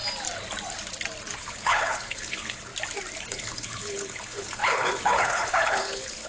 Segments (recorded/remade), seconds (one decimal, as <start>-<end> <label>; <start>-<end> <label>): 0.0-1.4 recorded; 1.4-2.7 remade; 2.7-3.2 recorded; 3.2-6.3 remade